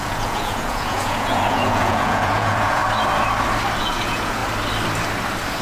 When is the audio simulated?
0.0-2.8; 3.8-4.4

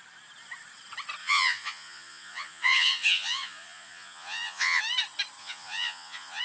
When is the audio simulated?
1.2-4.8; 5.4-6.4

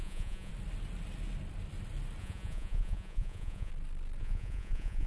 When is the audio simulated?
0.0-0.5; 2.2-3.7; 4.2-5.1